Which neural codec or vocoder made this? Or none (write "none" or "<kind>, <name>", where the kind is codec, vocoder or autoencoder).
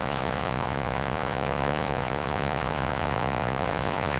vocoder, Vocos